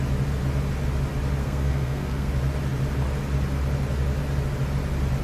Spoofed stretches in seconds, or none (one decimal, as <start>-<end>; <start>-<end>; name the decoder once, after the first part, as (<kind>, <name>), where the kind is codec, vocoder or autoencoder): 1.4-2.3 (codec, SNAC)